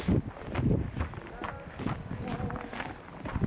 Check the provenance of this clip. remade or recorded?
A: recorded